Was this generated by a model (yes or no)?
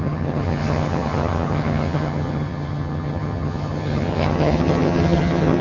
yes